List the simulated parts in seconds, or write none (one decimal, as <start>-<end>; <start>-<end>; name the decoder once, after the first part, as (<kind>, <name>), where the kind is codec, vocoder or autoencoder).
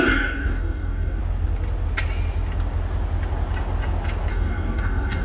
0.0-1.2 (codec, DAC); 4.3-5.2